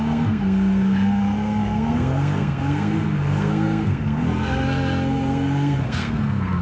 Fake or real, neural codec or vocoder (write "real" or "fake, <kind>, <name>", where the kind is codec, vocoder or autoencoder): fake, codec, SNAC